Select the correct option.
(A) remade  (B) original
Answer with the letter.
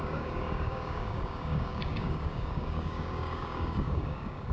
A